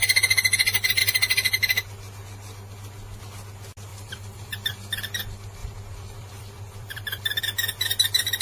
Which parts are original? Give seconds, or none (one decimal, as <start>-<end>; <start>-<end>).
0.0-3.9; 4.7-5.6; 7.4-8.4